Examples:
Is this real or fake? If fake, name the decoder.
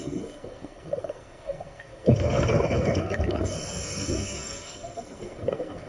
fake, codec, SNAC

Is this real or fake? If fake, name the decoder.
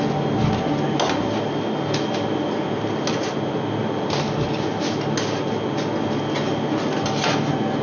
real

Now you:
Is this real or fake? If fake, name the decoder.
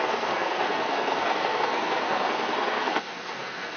fake, codec, SNAC